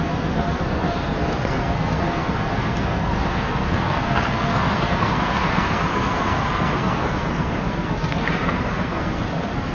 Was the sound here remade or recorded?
remade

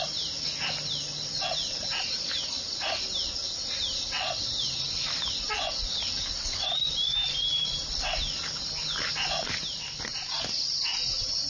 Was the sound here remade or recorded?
recorded